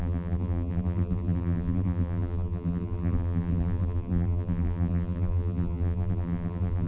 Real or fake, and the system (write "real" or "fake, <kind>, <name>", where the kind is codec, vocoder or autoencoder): fake, vocoder, BigVGAN v2